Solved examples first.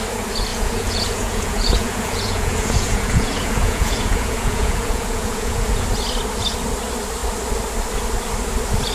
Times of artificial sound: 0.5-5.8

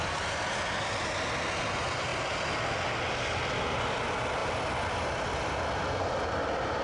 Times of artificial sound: none

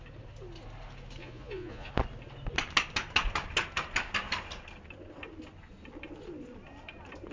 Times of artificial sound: 1.2-1.9